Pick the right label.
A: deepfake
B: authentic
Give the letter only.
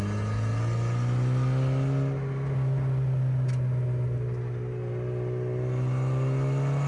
B